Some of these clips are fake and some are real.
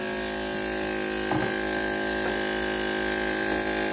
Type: real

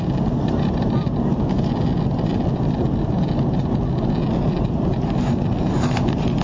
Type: real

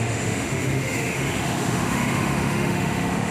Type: fake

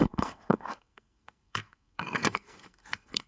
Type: fake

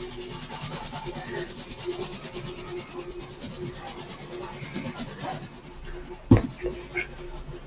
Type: real